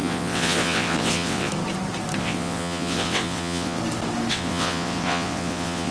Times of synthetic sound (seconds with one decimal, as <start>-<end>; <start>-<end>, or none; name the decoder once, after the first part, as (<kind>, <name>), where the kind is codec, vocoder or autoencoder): 0.0-1.5 (vocoder, WaveNeXt); 2.2-3.8; 4.3-5.9